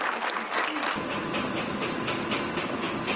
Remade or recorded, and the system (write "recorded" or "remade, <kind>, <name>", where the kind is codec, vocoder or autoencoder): recorded